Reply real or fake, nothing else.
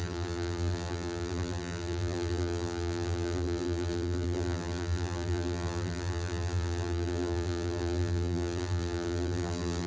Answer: fake